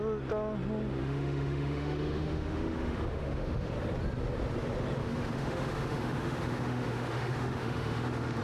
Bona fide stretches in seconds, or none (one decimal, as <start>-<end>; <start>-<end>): 0.0-1.0; 3.7-5.0